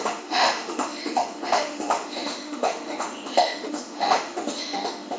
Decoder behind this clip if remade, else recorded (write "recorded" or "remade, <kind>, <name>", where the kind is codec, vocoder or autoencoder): remade, autoencoder, DAC-VAE